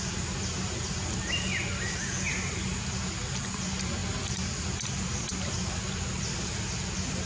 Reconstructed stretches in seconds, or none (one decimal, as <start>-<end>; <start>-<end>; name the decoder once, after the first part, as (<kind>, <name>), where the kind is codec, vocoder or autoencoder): 4.0-7.3 (vocoder, BigVGAN v2)